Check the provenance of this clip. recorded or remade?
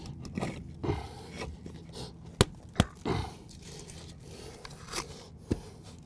recorded